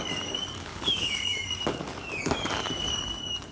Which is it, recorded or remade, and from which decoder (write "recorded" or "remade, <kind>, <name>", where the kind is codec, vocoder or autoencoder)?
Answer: remade, codec, DAC